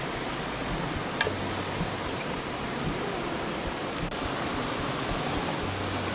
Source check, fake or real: real